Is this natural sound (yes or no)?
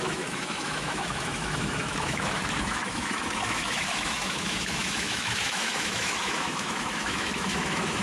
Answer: no